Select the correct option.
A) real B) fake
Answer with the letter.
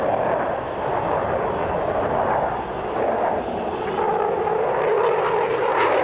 A